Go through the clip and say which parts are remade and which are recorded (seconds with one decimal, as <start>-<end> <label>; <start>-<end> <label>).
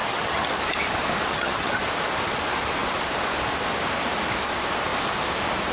0.0-0.5 remade; 0.5-1.3 recorded; 1.3-1.8 remade; 1.8-5.7 recorded